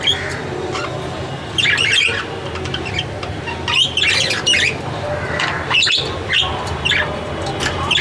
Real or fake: real